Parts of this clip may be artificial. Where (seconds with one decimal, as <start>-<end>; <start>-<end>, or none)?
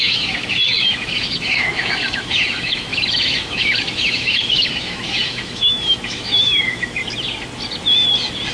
0.0-7.0